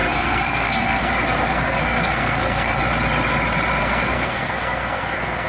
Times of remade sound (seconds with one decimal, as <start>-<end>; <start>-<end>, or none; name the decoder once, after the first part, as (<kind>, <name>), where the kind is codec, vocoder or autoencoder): 0.0-1.1 (codec, SNAC); 1.5-2.8; 3.8-5.5